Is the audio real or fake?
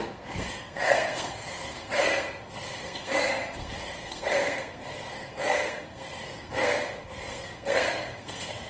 fake